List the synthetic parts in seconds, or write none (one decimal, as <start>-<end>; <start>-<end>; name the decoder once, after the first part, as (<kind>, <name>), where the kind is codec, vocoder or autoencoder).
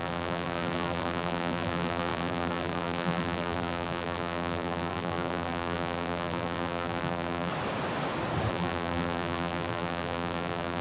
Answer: 0.0-7.5 (vocoder, BigVGAN v2); 8.5-10.8